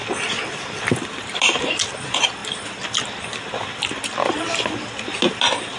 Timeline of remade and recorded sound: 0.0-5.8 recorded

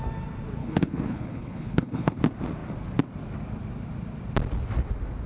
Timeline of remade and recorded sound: 0.0-0.6 recorded; 0.6-2.2 remade; 2.2-5.3 recorded

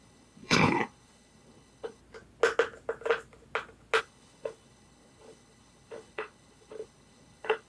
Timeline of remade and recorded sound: 0.0-2.0 remade; 2.0-4.0 recorded; 4.0-7.7 remade

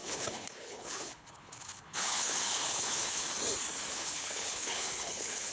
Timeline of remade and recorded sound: 0.0-3.3 remade; 3.3-3.9 recorded; 3.9-5.5 remade

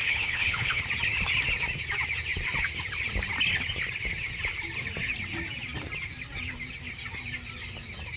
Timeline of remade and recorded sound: 0.0-0.8 remade; 0.8-8.2 recorded

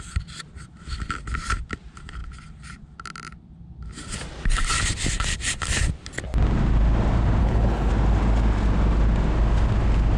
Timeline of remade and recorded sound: 0.0-7.4 recorded; 7.4-7.9 remade; 7.9-10.2 recorded